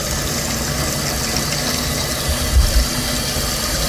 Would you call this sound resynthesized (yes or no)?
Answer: no